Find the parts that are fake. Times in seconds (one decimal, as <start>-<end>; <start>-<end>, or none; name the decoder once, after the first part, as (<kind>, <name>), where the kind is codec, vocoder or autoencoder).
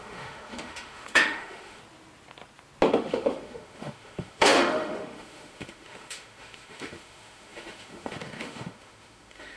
0.0-1.8 (autoencoder, DAC-VAE); 2.9-9.6